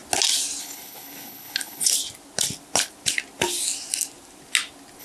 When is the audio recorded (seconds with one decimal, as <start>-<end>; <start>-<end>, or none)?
0.0-0.6; 1.9-5.0